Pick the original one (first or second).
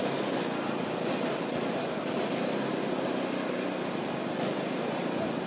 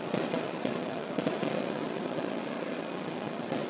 first